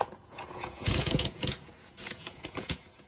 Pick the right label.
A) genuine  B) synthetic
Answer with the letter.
B